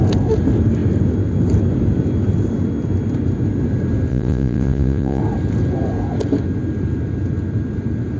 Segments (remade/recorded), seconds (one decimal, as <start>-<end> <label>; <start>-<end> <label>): 0.0-4.1 recorded; 4.1-5.2 remade; 5.2-8.2 recorded